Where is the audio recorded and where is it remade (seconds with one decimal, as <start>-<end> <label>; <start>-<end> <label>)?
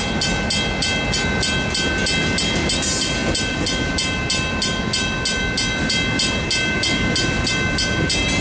0.0-8.4 recorded